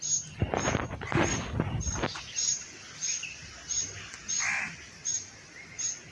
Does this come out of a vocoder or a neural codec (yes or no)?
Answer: no